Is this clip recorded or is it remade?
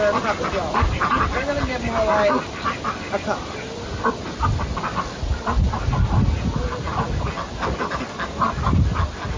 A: recorded